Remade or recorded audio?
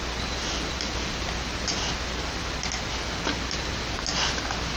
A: recorded